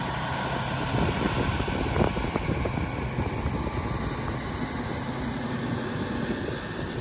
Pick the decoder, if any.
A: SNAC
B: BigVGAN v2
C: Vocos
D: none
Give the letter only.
D